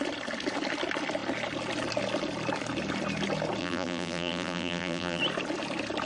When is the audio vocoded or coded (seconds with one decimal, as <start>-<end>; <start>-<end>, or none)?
3.6-5.2